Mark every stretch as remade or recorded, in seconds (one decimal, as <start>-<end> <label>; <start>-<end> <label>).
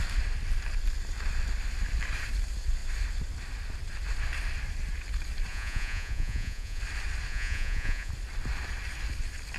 0.0-5.5 recorded; 5.5-6.8 remade; 6.8-7.3 recorded; 7.3-8.1 remade; 8.1-9.6 recorded